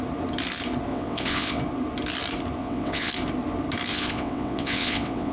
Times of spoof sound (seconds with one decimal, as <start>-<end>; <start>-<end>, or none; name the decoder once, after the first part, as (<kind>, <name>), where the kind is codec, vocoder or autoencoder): 0.9-1.6 (vocoder, WaveNeXt); 2.6-3.1; 3.9-5.3